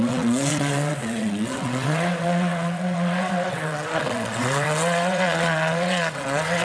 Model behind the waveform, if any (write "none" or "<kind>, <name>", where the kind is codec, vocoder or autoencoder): vocoder, WaveNeXt